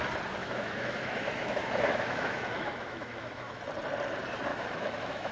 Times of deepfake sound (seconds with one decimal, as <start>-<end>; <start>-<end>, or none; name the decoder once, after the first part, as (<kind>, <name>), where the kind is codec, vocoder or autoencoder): 0.4-3.6 (autoencoder, DAC-VAE); 4.5-5.3